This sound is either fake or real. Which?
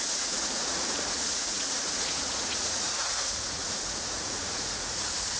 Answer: fake